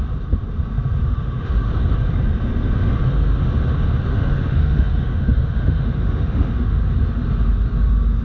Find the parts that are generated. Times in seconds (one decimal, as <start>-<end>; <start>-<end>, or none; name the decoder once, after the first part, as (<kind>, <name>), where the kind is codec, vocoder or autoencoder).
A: 1.0-1.7 (autoencoder, DAC-VAE); 4.1-6.8